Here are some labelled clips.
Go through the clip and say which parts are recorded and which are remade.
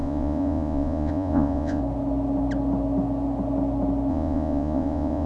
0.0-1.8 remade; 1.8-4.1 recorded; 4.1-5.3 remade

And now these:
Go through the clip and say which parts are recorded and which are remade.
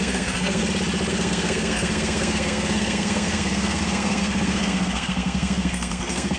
0.0-0.6 remade; 0.6-1.1 recorded; 1.1-6.4 remade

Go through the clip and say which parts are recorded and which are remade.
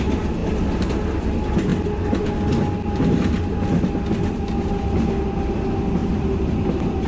0.0-7.1 recorded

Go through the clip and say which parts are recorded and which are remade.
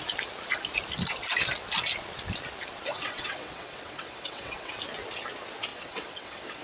0.0-2.9 recorded; 2.9-4.7 remade; 4.7-5.7 recorded; 5.7-6.6 remade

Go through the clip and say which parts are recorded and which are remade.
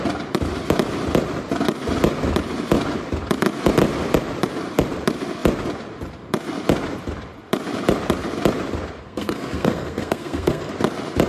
0.0-9.0 recorded; 9.0-10.7 remade; 10.7-11.3 recorded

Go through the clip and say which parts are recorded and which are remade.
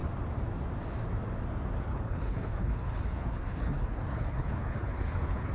0.0-1.9 recorded; 1.9-5.5 remade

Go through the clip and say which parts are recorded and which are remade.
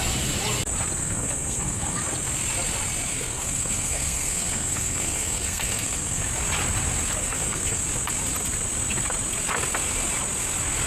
0.0-1.0 recorded; 1.0-2.0 remade; 2.0-3.1 recorded; 3.1-6.2 remade; 6.2-7.2 recorded; 7.2-7.8 remade; 7.8-10.9 recorded